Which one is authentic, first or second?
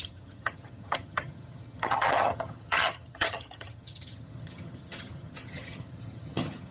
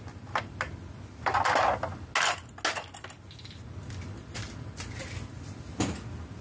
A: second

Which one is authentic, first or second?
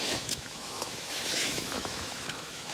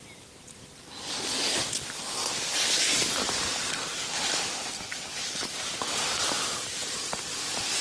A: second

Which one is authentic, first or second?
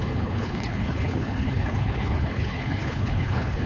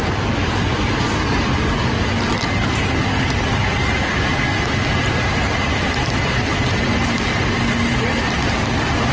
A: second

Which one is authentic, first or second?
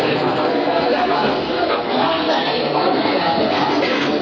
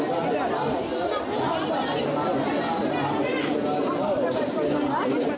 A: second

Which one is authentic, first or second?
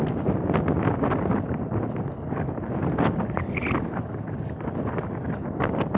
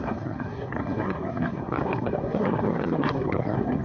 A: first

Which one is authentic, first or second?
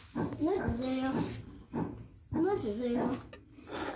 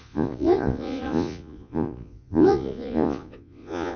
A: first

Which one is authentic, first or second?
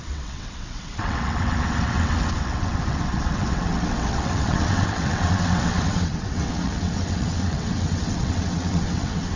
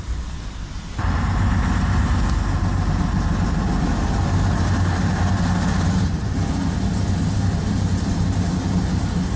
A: second